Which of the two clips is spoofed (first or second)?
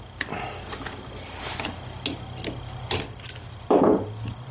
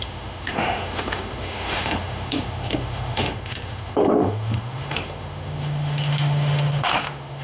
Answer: second